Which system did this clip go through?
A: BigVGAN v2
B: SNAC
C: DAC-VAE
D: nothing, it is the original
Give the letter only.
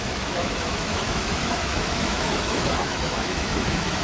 C